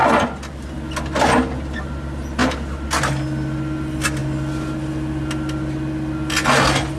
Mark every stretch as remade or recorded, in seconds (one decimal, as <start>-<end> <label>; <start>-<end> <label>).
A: 0.0-7.0 recorded